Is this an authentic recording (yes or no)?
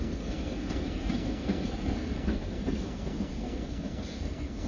no